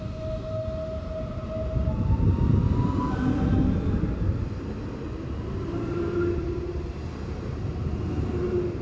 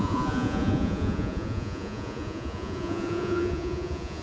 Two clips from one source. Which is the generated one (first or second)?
second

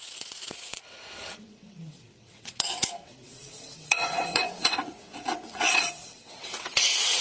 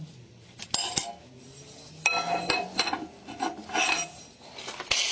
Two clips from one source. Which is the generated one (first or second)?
first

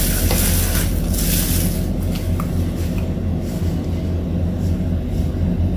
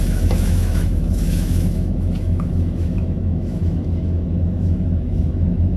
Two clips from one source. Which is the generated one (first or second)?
second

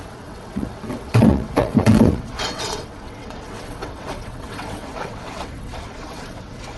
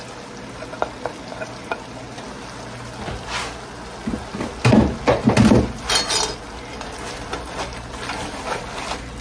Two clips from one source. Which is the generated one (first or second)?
first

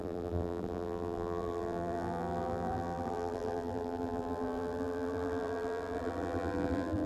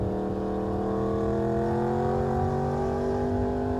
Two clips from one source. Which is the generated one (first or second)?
first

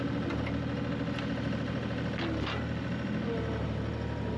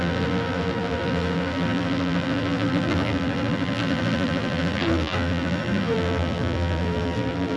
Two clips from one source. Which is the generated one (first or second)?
second